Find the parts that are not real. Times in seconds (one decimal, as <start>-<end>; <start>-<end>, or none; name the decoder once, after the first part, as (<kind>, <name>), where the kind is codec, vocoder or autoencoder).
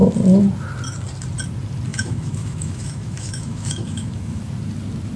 1.9-4.4 (autoencoder, DAC-VAE)